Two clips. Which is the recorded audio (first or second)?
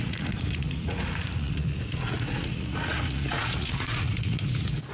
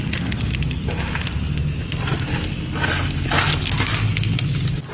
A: second